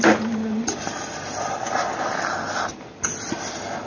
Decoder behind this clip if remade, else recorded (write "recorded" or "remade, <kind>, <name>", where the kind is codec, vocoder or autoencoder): recorded